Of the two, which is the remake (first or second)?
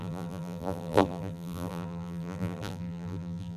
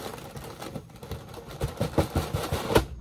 first